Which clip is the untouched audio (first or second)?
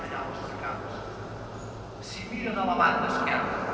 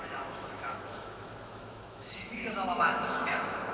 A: first